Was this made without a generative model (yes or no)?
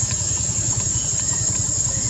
no